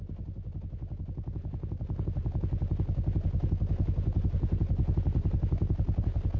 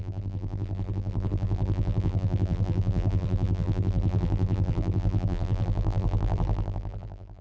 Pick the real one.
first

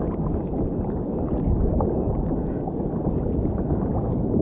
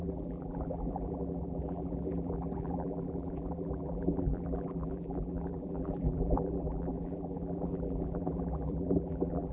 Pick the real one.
first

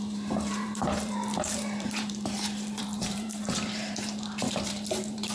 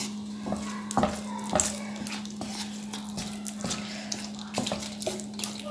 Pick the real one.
second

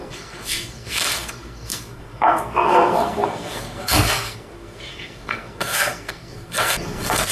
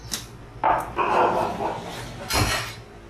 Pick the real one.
second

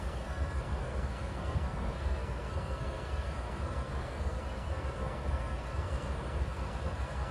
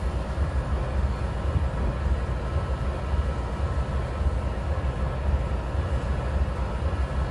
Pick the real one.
second